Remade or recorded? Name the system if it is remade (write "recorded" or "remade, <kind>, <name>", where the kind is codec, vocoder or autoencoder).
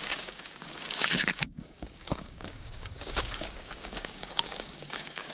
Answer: remade, codec, DAC